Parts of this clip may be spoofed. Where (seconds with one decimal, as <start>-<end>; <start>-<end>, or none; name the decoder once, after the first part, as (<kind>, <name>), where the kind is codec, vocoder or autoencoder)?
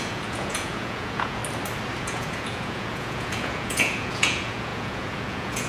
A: 0.0-1.4 (vocoder, Vocos); 2.0-5.7